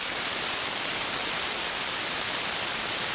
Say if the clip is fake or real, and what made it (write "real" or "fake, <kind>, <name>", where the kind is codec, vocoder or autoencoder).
fake, vocoder, BigVGAN v2